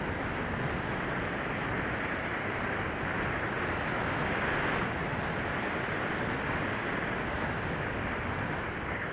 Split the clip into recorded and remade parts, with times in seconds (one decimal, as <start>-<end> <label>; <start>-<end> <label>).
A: 0.0-9.1 recorded